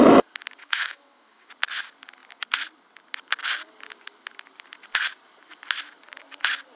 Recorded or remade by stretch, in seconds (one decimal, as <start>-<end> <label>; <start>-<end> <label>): 0.0-0.6 recorded; 0.6-1.5 remade; 1.5-6.8 recorded